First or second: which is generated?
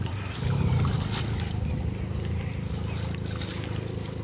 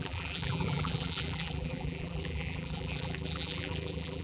second